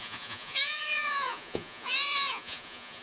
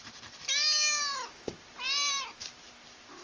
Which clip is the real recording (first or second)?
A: second